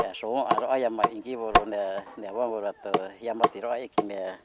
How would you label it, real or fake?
real